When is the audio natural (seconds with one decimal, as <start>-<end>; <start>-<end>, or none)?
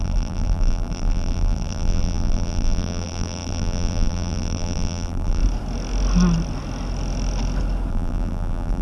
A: 5.4-7.9